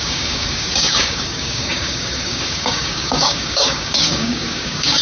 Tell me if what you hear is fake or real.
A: fake